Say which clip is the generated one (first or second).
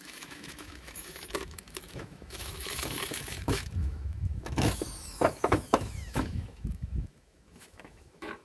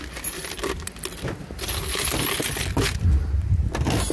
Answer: first